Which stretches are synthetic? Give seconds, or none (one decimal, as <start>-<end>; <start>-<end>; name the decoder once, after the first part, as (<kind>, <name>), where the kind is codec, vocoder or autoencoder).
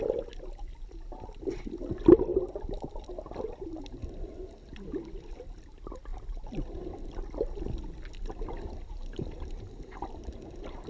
2.3-5.3 (vocoder, BigVGAN v2); 6.1-7.7